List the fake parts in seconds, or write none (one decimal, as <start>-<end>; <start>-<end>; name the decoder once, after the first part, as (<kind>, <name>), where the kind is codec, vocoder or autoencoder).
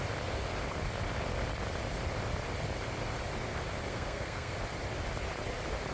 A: 3.9-4.5 (codec, SNAC)